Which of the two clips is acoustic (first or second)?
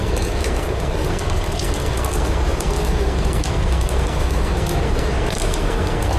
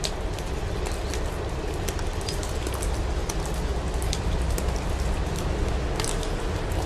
second